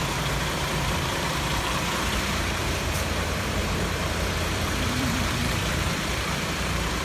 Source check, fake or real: fake